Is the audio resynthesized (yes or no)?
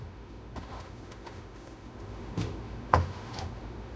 yes